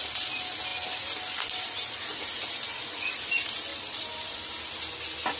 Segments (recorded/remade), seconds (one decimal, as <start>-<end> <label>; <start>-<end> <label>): 0.0-0.7 recorded; 0.7-3.0 remade; 3.0-3.7 recorded; 3.7-4.5 remade; 4.5-5.4 recorded